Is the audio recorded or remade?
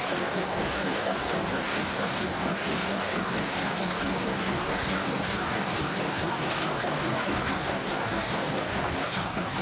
remade